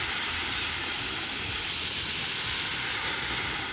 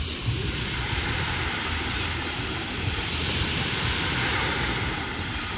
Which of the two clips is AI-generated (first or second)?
second